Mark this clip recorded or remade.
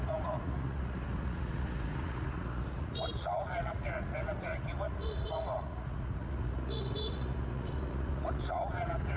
remade